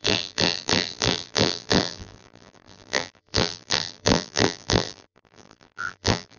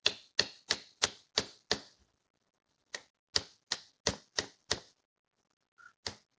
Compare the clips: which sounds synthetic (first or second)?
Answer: first